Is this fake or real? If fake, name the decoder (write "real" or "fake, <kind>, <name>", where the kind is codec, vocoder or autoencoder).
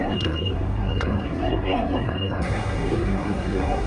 fake, codec, SNAC